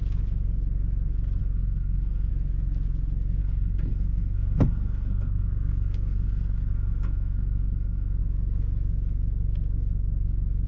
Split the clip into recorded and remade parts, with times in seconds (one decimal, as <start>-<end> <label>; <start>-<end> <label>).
0.0-1.4 recorded; 1.4-2.3 remade; 2.3-3.4 recorded; 3.4-8.2 remade; 8.2-10.7 recorded

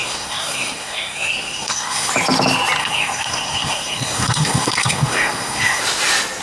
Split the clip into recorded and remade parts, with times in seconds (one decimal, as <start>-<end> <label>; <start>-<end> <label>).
0.0-2.1 remade; 2.1-2.8 recorded; 2.8-5.8 remade; 5.8-6.4 recorded